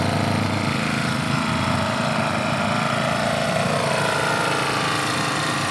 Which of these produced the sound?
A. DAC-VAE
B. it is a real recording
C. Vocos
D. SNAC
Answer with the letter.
B